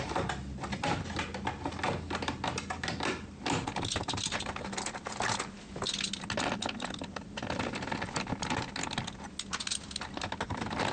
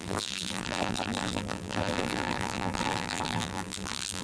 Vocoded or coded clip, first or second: second